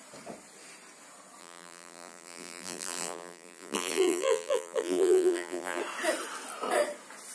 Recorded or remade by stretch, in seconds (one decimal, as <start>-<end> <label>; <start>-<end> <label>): 0.0-1.4 recorded; 1.4-5.8 remade; 5.8-7.3 recorded

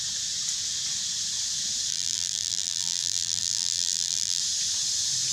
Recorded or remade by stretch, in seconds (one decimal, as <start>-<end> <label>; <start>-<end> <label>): 0.0-1.9 recorded; 1.9-4.4 remade; 4.4-5.3 recorded

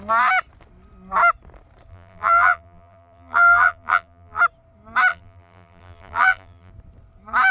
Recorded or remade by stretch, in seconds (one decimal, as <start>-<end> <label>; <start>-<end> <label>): 0.0-1.9 recorded; 1.9-4.4 remade; 4.4-5.1 recorded; 5.1-6.7 remade; 6.7-7.5 recorded

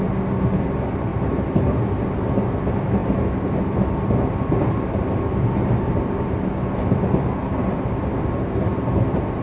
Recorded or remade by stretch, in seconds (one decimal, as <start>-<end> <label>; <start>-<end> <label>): 0.0-3.0 recorded; 3.0-6.3 remade; 6.3-7.4 recorded; 7.4-8.1 remade; 8.1-9.4 recorded